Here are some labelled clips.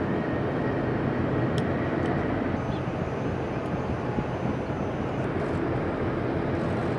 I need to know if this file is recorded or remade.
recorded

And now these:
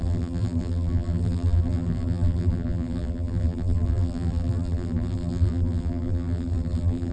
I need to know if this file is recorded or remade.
remade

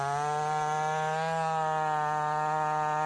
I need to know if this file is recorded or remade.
recorded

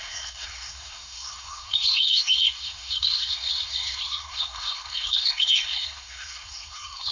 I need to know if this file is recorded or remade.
remade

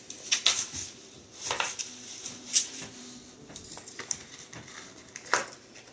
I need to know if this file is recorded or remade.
recorded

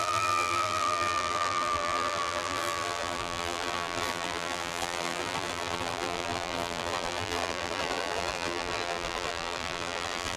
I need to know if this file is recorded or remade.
remade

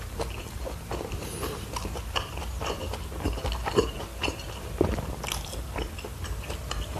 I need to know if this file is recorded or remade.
recorded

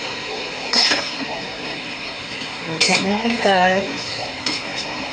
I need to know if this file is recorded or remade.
remade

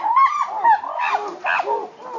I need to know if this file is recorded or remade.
recorded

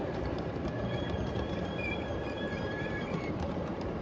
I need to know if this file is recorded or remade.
remade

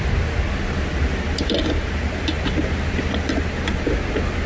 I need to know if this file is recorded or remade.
recorded